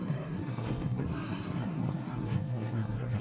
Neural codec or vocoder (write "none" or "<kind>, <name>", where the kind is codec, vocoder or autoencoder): codec, SNAC